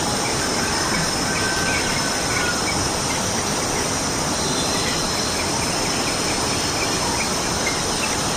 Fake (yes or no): no